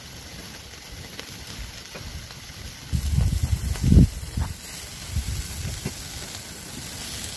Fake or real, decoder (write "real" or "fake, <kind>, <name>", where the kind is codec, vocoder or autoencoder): real